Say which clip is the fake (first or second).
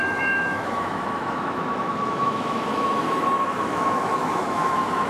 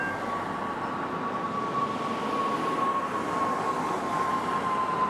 first